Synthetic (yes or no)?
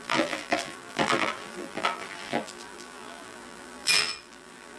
yes